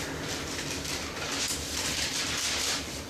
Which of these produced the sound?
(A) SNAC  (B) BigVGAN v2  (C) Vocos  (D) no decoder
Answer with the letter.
B